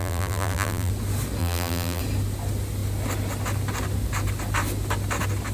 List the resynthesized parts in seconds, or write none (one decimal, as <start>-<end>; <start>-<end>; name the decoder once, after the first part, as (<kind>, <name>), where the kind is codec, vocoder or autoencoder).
0.0-0.9 (vocoder, BigVGAN v2); 1.4-2.0